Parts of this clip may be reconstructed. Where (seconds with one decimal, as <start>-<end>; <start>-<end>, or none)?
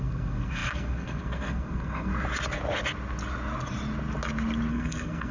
0.0-2.1; 4.7-5.3